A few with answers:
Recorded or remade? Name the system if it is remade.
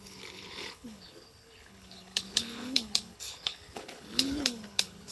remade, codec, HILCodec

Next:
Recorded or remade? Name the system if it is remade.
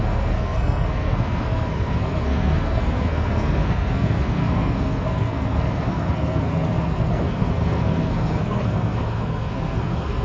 remade, codec, SNAC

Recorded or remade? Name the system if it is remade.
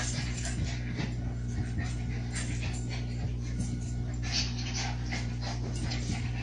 recorded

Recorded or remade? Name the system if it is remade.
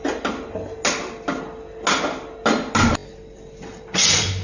recorded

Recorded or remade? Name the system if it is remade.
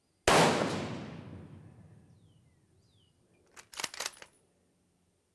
recorded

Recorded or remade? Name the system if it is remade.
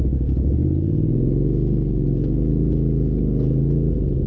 recorded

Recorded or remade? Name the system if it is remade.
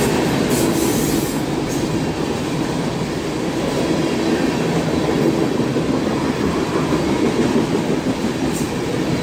recorded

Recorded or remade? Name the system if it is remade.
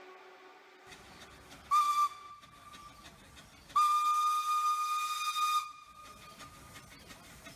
recorded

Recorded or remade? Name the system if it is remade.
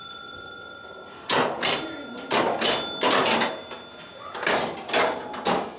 recorded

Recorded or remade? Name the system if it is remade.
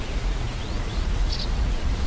remade, vocoder, Vocos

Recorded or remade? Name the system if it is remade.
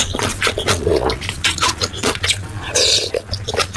remade, vocoder, Vocos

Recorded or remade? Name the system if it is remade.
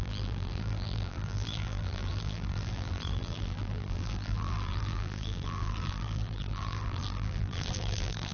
remade, vocoder, BigVGAN v2